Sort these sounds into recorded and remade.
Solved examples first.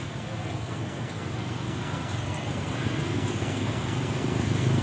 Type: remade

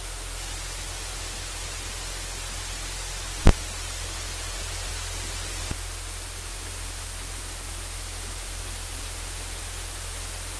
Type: recorded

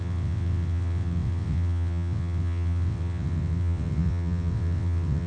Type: remade